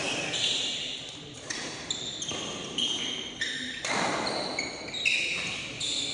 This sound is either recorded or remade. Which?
recorded